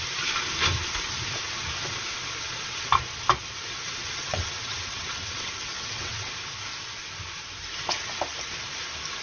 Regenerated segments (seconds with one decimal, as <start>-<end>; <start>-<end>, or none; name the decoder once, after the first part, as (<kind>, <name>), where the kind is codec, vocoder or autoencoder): 4.0-6.3 (vocoder, WaveNeXt)